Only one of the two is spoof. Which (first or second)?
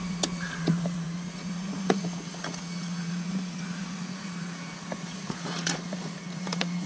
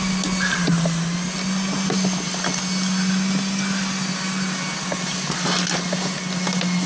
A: first